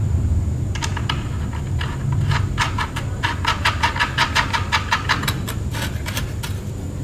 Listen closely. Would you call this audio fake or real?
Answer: real